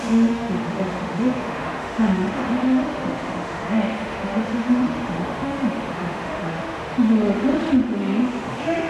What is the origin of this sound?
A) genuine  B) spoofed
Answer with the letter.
B